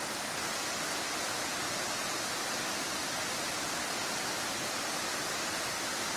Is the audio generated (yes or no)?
no